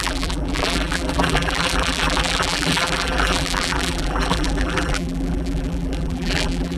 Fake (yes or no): yes